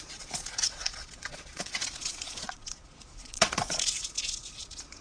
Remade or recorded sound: remade